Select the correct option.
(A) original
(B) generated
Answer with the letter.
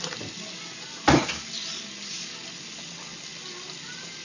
A